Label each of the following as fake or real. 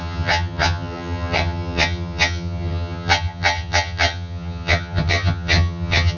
fake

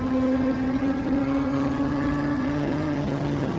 fake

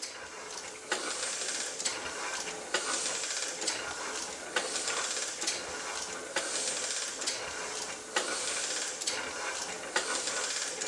real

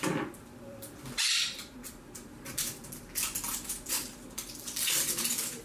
fake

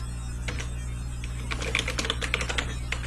real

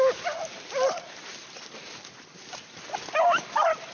real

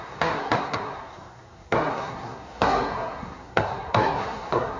fake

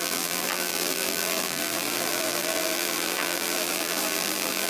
fake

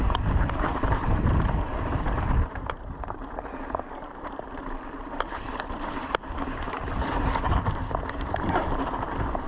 fake